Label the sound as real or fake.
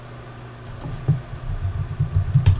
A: real